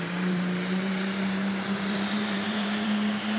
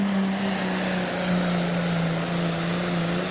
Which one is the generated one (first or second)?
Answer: first